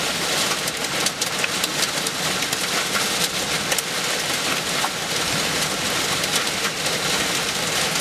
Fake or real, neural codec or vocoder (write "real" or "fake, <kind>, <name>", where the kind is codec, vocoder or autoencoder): real